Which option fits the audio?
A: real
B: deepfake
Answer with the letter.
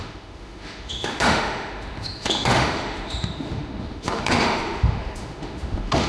B